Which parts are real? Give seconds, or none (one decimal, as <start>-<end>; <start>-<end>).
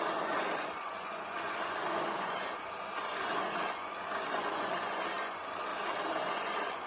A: 5.7-6.3